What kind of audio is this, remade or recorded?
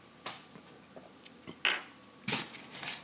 recorded